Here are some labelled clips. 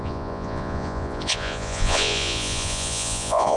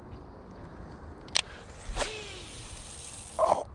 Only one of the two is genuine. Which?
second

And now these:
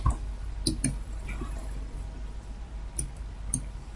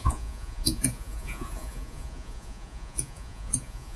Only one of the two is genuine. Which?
first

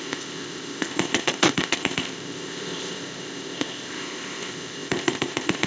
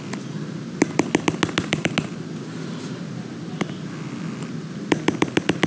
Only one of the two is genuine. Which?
second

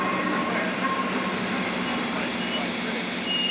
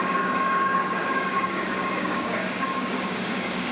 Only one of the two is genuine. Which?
first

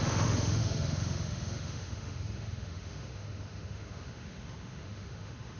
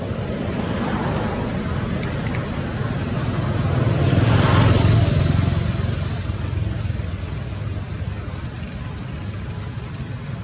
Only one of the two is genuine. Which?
second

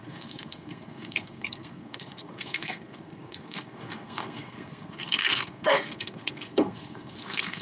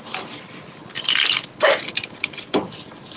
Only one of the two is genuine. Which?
second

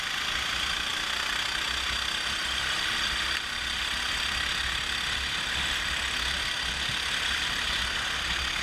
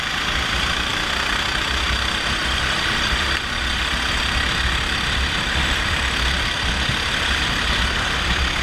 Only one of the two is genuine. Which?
first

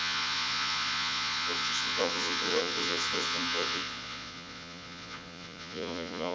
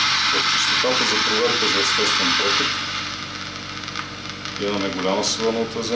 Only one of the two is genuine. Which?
second